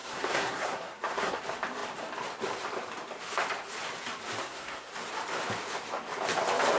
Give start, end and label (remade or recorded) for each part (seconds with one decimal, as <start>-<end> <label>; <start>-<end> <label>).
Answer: 0.0-1.4 remade; 1.4-4.4 recorded; 4.4-4.9 remade; 4.9-6.8 recorded